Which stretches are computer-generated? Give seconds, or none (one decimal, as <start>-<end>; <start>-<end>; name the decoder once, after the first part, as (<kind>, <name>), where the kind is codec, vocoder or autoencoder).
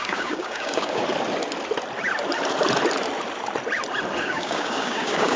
0.0-1.0 (codec, DAC); 4.2-5.4